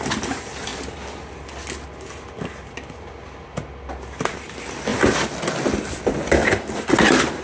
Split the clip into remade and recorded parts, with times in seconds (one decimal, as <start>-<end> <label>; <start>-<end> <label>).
0.0-7.4 recorded